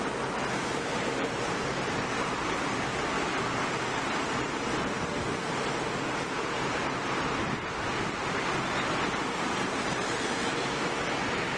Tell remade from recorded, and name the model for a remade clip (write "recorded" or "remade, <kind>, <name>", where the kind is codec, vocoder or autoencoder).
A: recorded